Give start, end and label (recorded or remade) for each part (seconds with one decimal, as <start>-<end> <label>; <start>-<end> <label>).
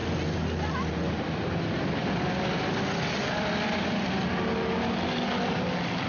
0.0-6.1 recorded